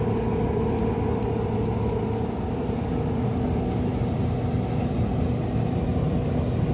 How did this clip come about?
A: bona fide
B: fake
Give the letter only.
A